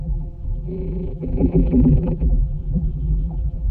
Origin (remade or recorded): remade